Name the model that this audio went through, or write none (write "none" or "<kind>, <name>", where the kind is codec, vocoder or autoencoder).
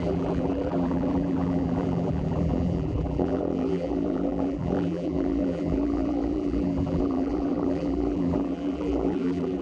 vocoder, BigVGAN v2